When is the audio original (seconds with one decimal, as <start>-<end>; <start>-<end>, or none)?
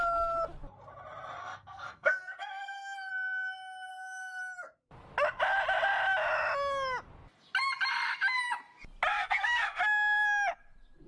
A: 0.0-1.4; 3.1-3.9; 4.4-9.1; 9.8-11.1